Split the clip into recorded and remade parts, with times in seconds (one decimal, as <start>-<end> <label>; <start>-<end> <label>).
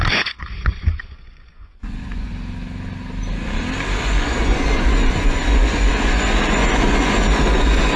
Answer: 0.0-2.3 remade; 2.3-4.0 recorded; 4.0-8.0 remade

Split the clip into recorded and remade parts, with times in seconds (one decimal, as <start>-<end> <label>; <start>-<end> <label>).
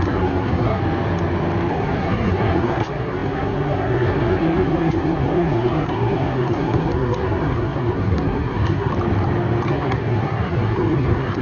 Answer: 0.0-0.8 remade; 0.8-1.7 recorded; 1.7-8.9 remade; 8.9-9.7 recorded; 9.7-11.4 remade